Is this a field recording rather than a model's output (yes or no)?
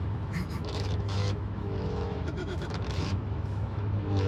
no